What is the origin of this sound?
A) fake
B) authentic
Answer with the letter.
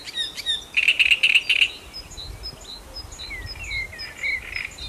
B